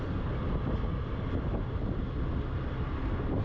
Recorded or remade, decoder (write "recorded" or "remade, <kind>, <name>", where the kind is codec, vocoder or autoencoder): recorded